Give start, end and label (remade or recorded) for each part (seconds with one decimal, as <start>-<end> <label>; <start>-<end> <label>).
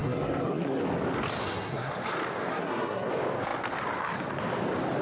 0.0-0.8 remade; 0.8-1.4 recorded; 1.4-1.9 remade; 1.9-2.5 recorded; 2.5-3.1 remade; 3.1-5.0 recorded